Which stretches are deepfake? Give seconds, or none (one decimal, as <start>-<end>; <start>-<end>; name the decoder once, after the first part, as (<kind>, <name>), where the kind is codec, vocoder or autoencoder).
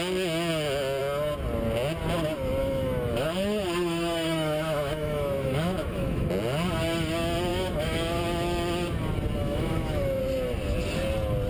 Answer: 2.6-6.3 (autoencoder, DAC-VAE); 7.5-8.2; 9.4-10.2